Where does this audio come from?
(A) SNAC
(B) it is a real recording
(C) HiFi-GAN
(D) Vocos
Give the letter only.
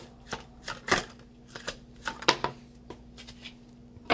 B